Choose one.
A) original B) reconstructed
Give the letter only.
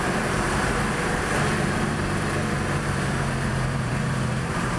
B